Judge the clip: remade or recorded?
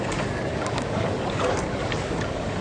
remade